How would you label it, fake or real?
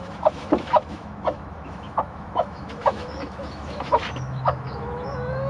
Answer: fake